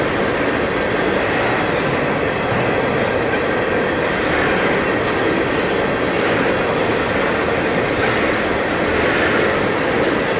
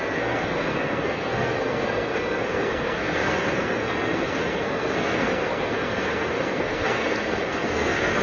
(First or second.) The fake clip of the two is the second